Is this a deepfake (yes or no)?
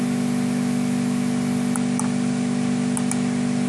no